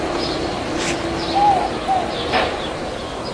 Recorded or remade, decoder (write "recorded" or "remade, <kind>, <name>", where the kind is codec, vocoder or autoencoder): recorded